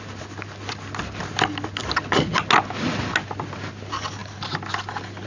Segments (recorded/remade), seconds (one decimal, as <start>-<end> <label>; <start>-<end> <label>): 0.0-5.3 recorded